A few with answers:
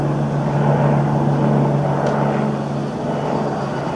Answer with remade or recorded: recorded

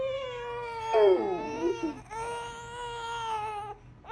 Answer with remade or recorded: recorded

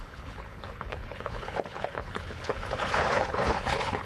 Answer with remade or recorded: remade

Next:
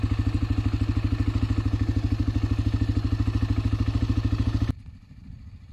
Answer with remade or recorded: recorded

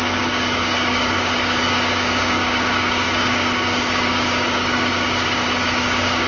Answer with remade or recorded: remade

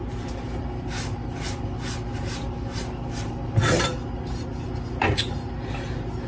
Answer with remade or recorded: recorded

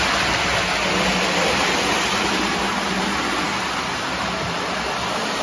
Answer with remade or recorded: recorded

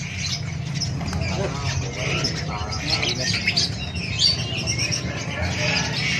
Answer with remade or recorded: recorded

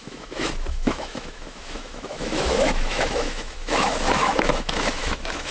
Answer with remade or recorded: remade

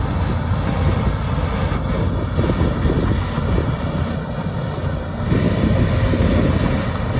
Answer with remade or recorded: recorded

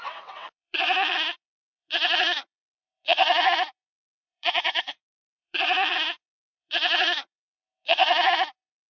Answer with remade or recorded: remade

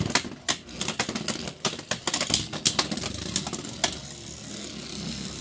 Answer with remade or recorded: recorded